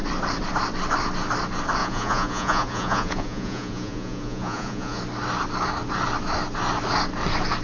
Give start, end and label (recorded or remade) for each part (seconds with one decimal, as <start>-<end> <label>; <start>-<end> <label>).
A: 0.0-1.8 recorded; 1.8-5.0 remade; 5.0-7.6 recorded